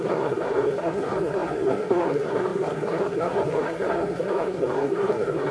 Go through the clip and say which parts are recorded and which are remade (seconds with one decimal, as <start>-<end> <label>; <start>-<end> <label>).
0.0-5.5 remade